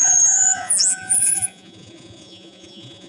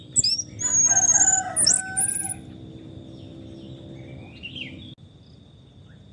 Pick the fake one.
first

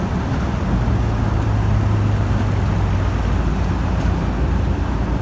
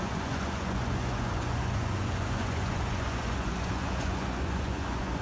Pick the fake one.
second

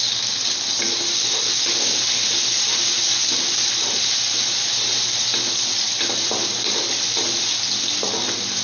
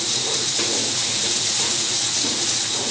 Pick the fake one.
second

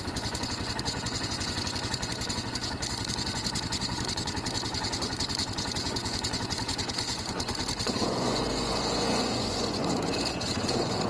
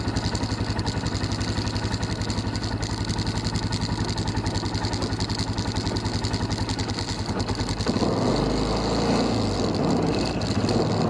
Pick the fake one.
first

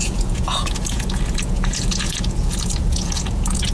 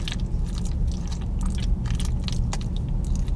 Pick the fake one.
first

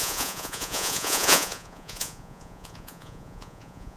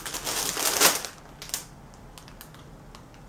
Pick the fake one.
first